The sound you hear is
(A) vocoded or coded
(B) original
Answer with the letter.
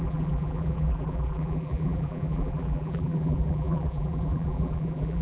A